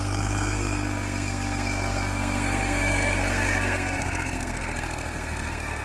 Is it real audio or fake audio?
fake